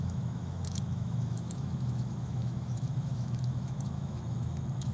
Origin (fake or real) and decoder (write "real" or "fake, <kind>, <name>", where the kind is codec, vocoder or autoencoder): fake, autoencoder, DAC-VAE